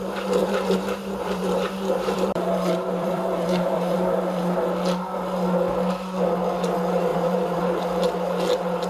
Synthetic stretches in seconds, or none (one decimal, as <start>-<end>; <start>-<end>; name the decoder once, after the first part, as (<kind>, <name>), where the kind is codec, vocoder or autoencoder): 0.4-4.6 (vocoder, BigVGAN v2); 7.1-7.6